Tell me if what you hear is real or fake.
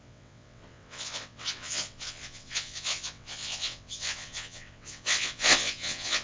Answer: fake